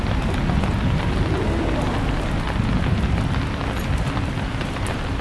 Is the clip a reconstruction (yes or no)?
no